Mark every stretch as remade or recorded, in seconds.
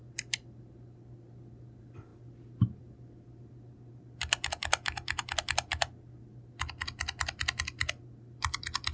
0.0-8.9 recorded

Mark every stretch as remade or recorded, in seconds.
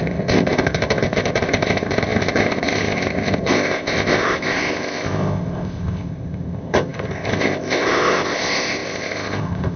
0.0-9.8 remade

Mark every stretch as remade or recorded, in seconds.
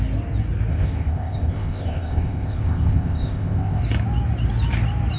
0.0-0.7 recorded; 0.7-3.8 remade; 3.8-5.2 recorded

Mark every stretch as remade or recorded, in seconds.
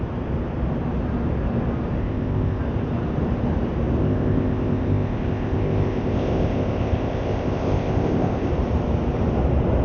0.0-2.0 recorded; 2.0-2.6 remade; 2.6-4.0 recorded; 4.0-8.5 remade; 8.5-9.8 recorded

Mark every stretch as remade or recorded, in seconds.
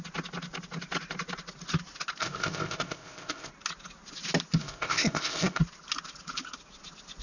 0.0-2.2 recorded; 2.2-3.5 remade; 3.5-4.6 recorded; 4.6-5.6 remade; 5.6-7.2 recorded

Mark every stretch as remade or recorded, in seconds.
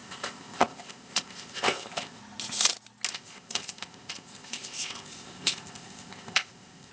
0.0-2.2 remade; 2.2-3.1 recorded; 3.1-6.9 remade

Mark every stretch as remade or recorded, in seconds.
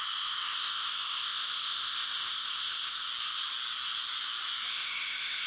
0.0-3.1 remade; 3.1-4.7 recorded; 4.7-5.5 remade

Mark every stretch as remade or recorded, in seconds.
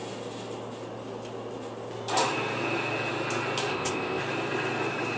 0.0-3.7 recorded; 3.7-4.2 remade; 4.2-5.2 recorded